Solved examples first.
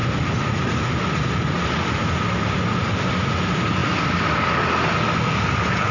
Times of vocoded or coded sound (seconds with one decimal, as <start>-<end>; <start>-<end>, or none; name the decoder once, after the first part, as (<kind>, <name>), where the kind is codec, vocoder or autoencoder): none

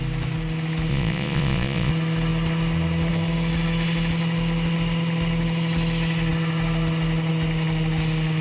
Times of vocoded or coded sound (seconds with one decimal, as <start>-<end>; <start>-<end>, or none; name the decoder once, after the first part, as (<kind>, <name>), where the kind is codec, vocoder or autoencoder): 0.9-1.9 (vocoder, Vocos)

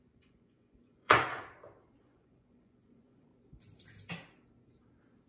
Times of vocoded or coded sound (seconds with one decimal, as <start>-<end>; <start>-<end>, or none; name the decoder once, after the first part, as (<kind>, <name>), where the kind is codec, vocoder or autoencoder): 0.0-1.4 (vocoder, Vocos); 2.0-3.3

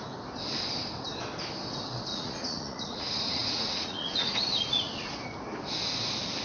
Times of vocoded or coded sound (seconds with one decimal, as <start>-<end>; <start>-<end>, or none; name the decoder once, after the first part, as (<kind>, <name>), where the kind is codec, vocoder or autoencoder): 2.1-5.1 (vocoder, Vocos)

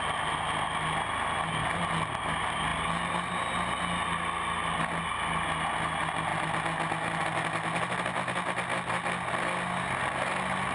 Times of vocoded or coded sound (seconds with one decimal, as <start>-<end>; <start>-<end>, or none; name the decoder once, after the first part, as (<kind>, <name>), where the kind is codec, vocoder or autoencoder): none